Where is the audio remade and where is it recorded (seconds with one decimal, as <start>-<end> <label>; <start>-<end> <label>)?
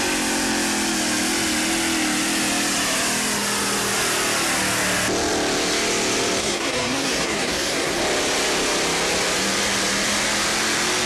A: 0.0-6.4 recorded; 6.4-8.0 remade; 8.0-11.1 recorded